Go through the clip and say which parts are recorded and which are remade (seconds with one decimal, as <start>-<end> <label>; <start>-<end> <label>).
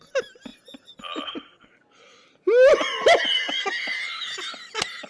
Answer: 0.0-5.1 recorded